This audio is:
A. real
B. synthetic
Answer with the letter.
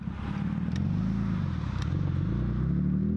A